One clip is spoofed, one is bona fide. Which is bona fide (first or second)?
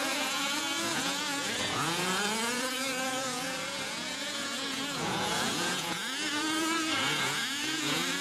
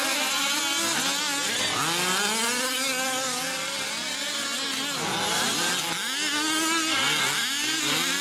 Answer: second